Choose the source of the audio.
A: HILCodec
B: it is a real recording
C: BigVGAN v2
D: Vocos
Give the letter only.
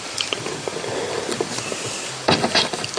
C